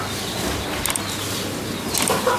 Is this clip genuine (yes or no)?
yes